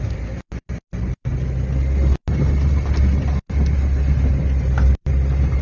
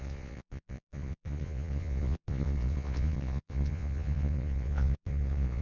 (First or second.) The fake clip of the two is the second